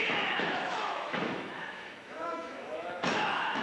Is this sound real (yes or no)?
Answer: no